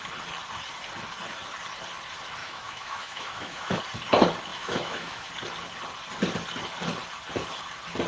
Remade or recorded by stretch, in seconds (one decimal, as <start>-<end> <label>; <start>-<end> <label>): 0.0-2.4 recorded; 2.4-3.8 remade; 3.8-4.5 recorded; 4.5-5.3 remade; 5.3-8.1 recorded